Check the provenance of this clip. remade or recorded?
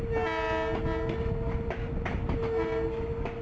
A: recorded